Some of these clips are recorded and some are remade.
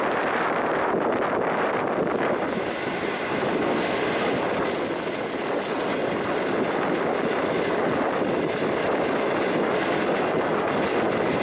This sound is recorded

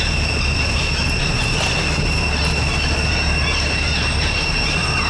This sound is recorded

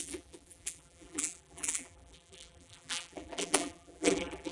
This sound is remade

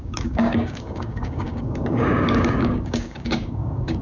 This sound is remade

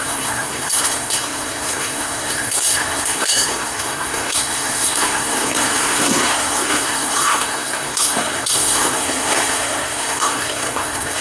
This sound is remade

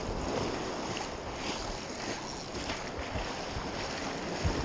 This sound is recorded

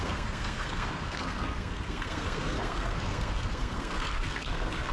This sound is remade